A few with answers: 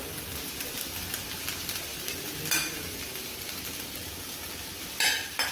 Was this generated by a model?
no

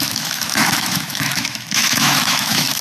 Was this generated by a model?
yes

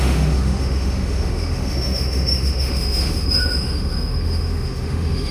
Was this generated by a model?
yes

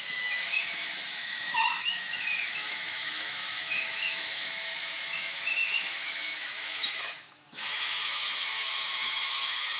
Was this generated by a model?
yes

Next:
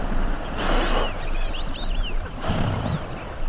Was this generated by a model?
no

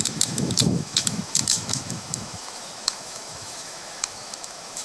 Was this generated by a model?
yes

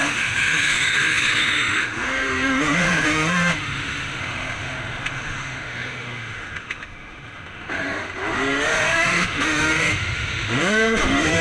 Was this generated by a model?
yes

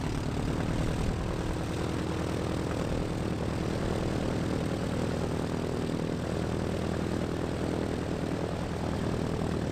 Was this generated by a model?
no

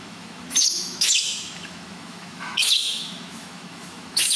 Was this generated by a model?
yes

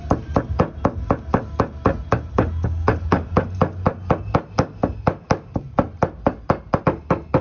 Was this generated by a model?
no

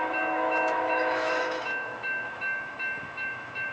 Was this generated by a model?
yes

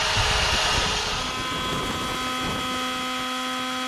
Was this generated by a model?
no